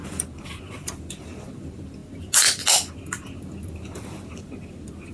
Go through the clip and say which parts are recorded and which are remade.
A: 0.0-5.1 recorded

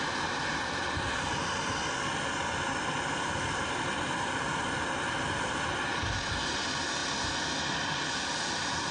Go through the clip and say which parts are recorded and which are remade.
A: 0.0-8.9 recorded

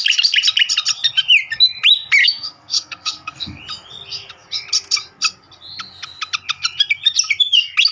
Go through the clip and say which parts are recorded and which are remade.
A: 0.0-2.2 recorded; 2.2-3.6 remade; 3.6-7.9 recorded

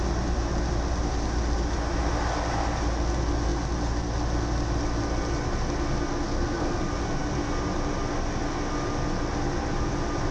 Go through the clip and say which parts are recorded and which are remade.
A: 0.0-6.1 recorded; 6.1-6.8 remade; 6.8-10.3 recorded

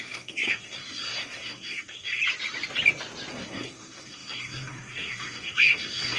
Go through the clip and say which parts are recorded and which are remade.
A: 0.0-2.2 remade; 2.2-3.3 recorded; 3.3-6.2 remade